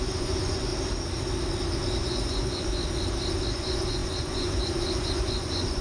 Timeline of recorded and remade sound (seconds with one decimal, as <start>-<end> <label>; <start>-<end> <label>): 0.0-0.7 remade; 0.7-2.0 recorded; 2.0-2.8 remade; 2.8-3.5 recorded; 3.5-5.8 remade